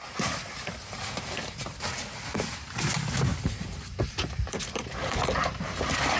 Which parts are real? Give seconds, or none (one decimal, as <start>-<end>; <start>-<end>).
0.0-3.3; 5.2-6.2